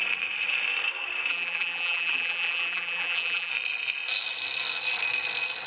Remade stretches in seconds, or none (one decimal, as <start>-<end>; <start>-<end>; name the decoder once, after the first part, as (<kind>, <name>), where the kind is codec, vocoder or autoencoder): 1.3-3.5 (vocoder, BigVGAN v2)